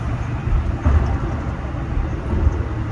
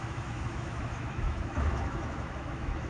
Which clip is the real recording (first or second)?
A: first